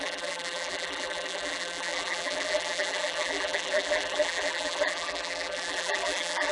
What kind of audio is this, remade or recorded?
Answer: remade